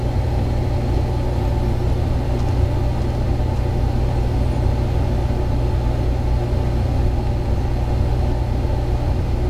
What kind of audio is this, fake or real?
real